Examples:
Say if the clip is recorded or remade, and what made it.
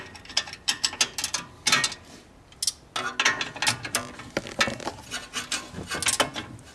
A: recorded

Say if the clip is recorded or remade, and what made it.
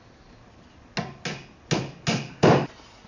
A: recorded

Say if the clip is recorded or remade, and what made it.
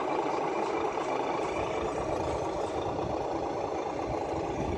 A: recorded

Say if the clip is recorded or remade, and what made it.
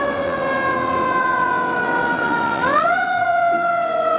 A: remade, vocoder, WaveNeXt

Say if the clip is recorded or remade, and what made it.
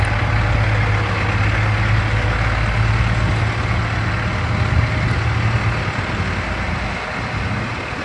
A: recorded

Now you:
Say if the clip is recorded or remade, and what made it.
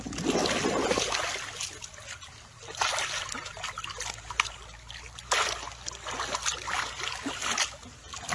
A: recorded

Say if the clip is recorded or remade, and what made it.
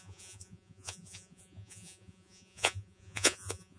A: remade, vocoder, Vocos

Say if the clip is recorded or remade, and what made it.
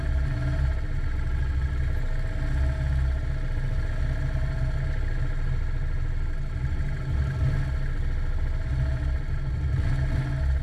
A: recorded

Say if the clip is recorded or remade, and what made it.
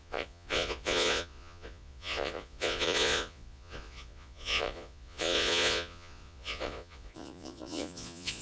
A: remade, vocoder, Vocos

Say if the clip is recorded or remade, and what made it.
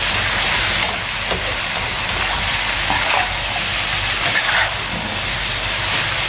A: recorded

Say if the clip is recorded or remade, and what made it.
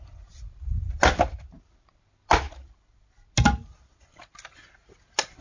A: recorded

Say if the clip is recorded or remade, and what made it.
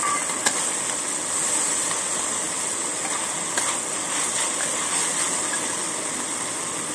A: recorded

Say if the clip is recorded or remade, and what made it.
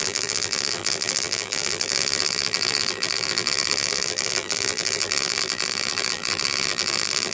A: remade, vocoder, BigVGAN v2